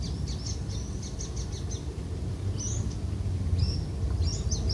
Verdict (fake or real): real